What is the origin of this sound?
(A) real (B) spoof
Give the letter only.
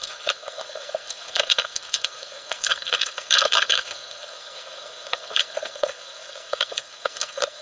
B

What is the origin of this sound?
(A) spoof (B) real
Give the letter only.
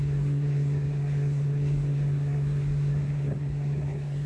A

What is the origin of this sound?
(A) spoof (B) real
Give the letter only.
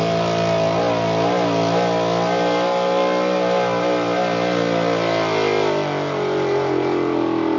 B